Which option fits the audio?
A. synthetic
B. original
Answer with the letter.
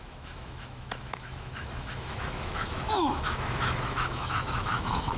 A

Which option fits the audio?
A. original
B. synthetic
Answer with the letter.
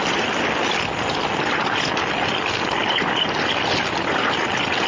A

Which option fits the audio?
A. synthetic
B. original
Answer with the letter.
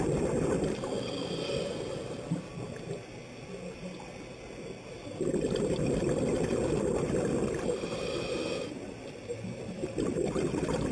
B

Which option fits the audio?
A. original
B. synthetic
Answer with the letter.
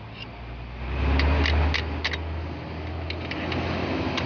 A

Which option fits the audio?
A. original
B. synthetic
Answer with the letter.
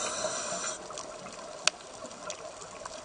A